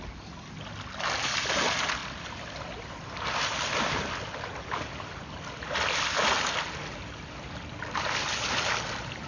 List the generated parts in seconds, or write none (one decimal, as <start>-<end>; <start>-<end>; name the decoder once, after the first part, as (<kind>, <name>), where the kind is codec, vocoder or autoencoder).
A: 2.0-2.9 (vocoder, BigVGAN v2)